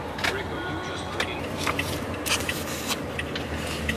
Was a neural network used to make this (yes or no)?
no